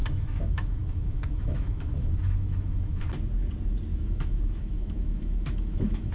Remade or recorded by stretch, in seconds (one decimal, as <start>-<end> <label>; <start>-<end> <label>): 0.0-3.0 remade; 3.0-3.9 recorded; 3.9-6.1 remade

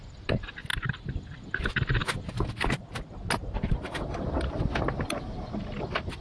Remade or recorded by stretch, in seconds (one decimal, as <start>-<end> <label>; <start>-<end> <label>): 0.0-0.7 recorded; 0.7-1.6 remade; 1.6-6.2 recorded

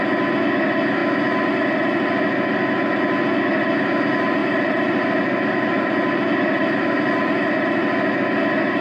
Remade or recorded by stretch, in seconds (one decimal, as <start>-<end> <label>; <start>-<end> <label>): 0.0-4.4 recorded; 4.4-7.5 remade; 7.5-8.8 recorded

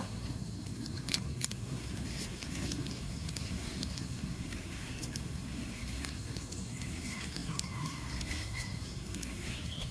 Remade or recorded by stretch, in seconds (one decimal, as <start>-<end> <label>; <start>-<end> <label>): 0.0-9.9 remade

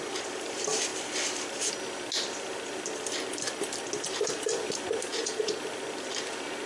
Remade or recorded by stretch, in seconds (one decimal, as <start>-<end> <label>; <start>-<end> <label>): 0.0-5.1 recorded; 5.1-5.6 remade; 5.6-6.7 recorded

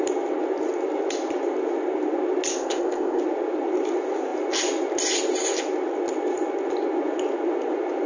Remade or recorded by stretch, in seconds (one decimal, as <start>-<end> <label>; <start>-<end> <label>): 0.0-2.5 recorded; 2.5-3.2 remade; 3.2-8.1 recorded